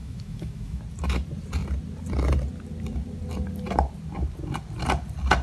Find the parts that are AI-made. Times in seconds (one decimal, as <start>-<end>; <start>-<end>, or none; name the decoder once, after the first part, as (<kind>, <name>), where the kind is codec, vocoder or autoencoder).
0.0-0.8 (autoencoder, DAC-VAE)